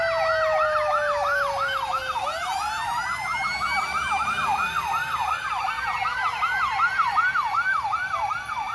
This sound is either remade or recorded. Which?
recorded